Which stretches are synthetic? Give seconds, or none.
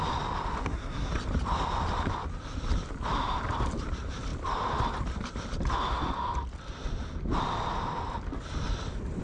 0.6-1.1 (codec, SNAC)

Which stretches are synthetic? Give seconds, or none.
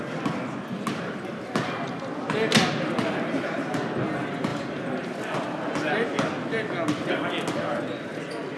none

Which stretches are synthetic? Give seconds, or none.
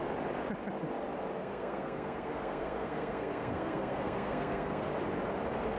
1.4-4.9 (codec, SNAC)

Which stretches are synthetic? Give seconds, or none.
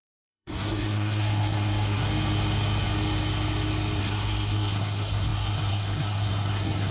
0.0-2.0 (codec, SNAC); 4.0-6.9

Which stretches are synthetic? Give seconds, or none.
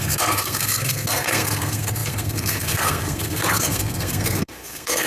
0.0-5.1 (codec, SNAC)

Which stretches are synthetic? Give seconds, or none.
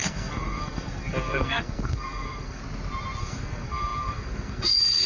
0.0-2.6 (codec, SNAC); 3.2-5.1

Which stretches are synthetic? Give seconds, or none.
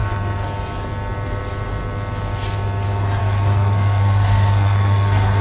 3.2-5.4 (codec, SNAC)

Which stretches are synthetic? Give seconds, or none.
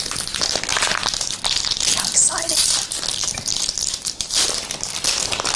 none